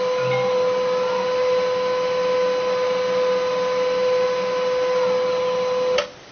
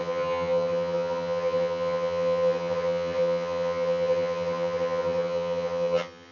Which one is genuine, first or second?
first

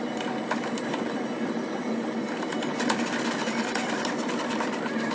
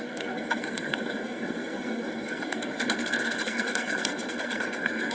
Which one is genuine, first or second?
first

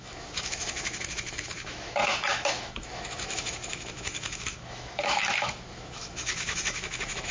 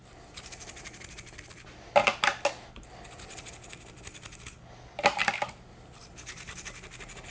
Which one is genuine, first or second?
second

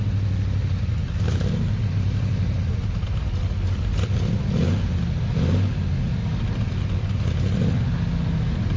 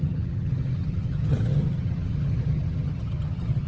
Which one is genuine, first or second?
first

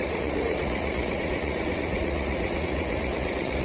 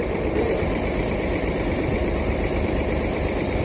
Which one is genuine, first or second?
second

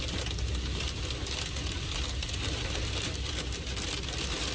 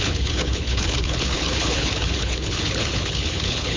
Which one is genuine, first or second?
first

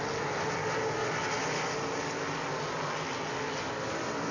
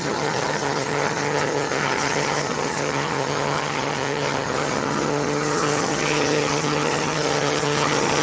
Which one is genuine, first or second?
first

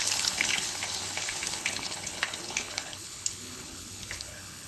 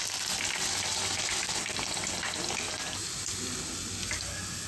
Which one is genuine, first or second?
second